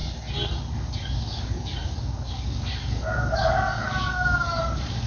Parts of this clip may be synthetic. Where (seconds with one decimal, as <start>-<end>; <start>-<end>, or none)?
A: 0.7-5.1